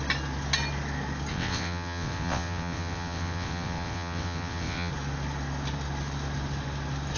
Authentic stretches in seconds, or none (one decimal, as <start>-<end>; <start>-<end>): 0.0-1.3; 4.9-7.2